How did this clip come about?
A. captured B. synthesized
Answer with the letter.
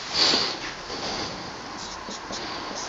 A